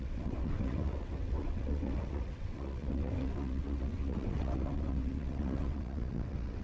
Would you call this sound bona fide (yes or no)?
no